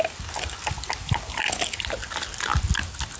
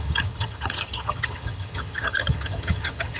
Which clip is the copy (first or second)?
second